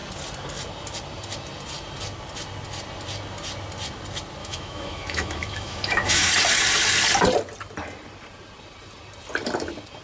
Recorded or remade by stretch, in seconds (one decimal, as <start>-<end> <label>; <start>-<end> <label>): 0.0-4.4 recorded; 4.4-6.3 remade; 6.3-10.0 recorded